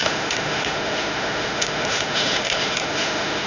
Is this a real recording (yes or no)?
no